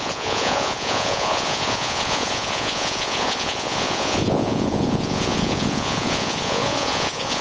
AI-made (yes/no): yes